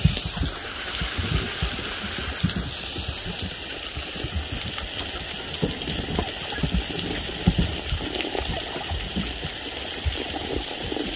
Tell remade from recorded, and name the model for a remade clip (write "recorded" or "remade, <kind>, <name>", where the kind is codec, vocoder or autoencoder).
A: recorded